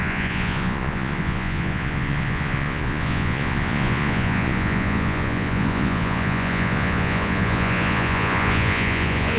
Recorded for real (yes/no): no